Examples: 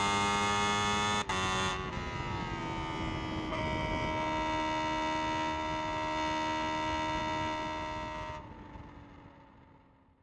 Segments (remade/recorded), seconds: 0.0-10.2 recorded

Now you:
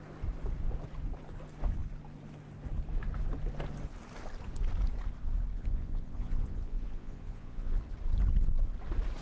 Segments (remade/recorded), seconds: 0.0-5.5 recorded; 5.5-7.8 remade; 7.8-9.2 recorded

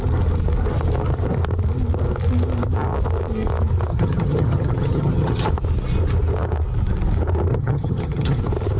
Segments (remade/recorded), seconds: 0.0-3.9 recorded; 3.9-5.5 remade; 5.5-7.5 recorded; 7.5-8.4 remade; 8.4-8.8 recorded

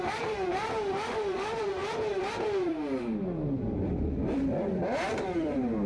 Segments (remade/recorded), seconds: 0.0-5.9 remade

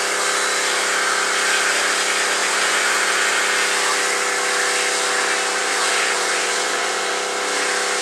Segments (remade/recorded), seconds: 0.0-2.4 recorded; 2.4-3.4 remade; 3.4-5.6 recorded; 5.6-7.1 remade; 7.1-8.0 recorded

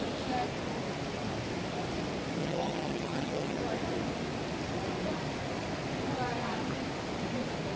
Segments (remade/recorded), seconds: 0.0-2.4 recorded; 2.4-3.6 remade; 3.6-7.8 recorded

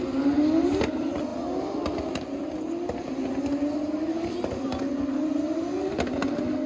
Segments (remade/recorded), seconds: 0.0-6.7 recorded

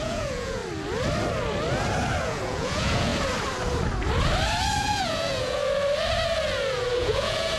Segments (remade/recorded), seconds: 0.0-0.6 remade; 0.6-2.2 recorded; 2.2-3.1 remade; 3.1-4.8 recorded; 4.8-5.6 remade; 5.6-7.0 recorded; 7.0-7.6 remade